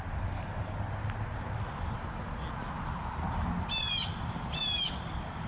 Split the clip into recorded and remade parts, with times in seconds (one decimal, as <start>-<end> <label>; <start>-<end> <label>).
0.0-5.5 recorded